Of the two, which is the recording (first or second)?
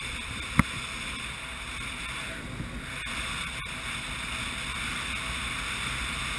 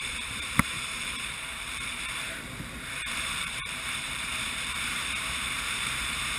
first